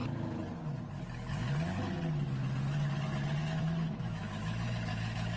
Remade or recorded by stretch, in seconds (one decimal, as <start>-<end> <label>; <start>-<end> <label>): 0.0-3.4 recorded; 3.4-5.4 remade